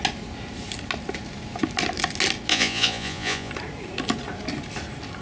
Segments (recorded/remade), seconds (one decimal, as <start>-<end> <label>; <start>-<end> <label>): 0.0-2.5 recorded; 2.5-3.5 remade; 3.5-5.2 recorded

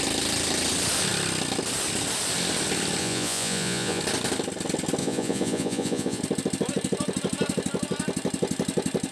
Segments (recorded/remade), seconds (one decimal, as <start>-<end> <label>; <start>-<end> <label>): 0.0-3.0 recorded; 3.0-4.0 remade; 4.0-5.0 recorded; 5.0-6.2 remade; 6.2-9.1 recorded

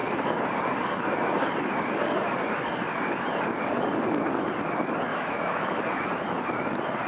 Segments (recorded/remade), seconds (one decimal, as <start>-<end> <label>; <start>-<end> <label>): 0.0-5.1 recorded; 5.1-5.8 remade; 5.8-7.1 recorded

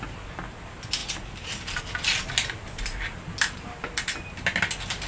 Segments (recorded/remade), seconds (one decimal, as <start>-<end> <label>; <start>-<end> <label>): 0.0-5.1 recorded